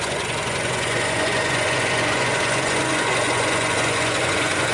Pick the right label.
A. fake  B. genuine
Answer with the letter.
A